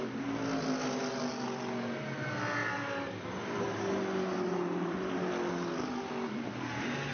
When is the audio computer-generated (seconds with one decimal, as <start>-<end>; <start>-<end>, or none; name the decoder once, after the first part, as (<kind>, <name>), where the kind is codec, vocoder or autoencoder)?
none